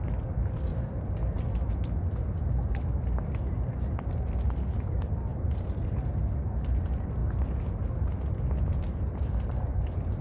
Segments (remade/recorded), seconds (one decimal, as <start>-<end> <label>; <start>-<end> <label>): 0.0-0.7 recorded; 0.7-1.4 remade; 1.4-5.3 recorded; 5.3-6.1 remade; 6.1-10.2 recorded